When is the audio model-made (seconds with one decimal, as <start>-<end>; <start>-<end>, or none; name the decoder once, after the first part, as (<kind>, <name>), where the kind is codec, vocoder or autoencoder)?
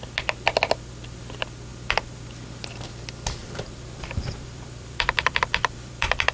3.4-6.3 (vocoder, BigVGAN v2)